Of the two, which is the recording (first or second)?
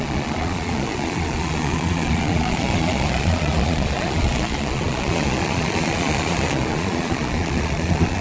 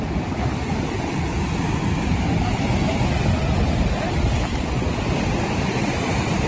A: second